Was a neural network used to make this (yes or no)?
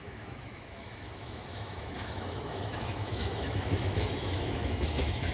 yes